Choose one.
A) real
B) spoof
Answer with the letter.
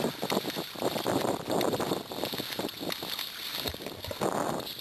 A